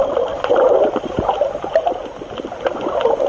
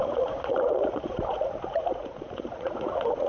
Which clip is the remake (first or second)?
second